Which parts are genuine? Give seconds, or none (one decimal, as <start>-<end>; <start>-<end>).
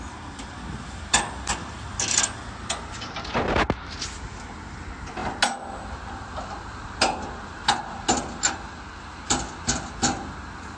0.0-10.8